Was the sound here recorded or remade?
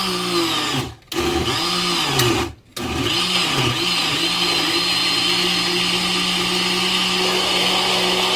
recorded